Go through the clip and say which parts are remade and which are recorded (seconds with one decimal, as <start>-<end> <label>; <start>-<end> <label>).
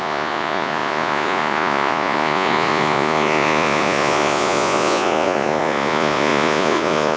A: 0.0-7.2 remade